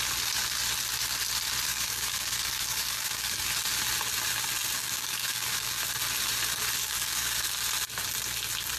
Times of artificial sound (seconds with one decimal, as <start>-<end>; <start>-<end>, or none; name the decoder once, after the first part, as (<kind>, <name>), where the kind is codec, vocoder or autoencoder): 1.7-3.4 (codec, DAC); 4.8-5.8; 6.8-7.5